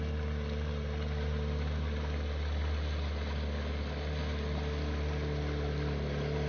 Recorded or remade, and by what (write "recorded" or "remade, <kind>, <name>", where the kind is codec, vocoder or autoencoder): recorded